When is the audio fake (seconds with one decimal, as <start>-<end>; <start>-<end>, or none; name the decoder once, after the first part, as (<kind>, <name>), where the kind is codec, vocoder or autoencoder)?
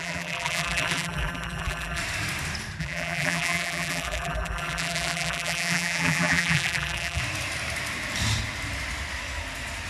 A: 0.0-2.0 (vocoder, BigVGAN v2); 2.8-7.2